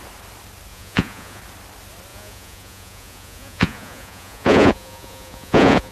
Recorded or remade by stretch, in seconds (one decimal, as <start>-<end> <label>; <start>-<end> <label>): 0.0-0.7 recorded; 0.7-1.4 remade; 1.4-2.1 recorded; 2.1-5.9 remade